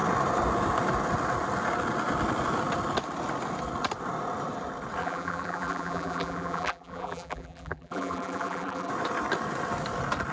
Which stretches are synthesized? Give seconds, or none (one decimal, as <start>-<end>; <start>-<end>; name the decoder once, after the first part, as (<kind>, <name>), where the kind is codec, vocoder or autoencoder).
5.0-8.9 (vocoder, BigVGAN v2)